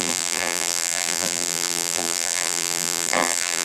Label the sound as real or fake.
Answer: fake